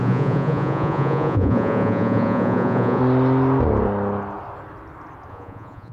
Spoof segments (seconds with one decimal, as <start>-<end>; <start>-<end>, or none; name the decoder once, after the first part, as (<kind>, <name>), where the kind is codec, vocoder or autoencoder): 0.0-3.0 (vocoder, Vocos); 5.3-5.9